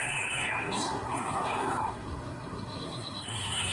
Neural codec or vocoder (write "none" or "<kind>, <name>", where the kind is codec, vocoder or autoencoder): codec, SNAC